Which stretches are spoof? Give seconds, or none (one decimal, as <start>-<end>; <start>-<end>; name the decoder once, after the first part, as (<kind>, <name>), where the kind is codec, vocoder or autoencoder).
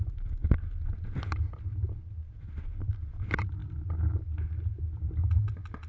none